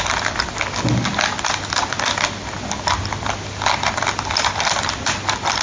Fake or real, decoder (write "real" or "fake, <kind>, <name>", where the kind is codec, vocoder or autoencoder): real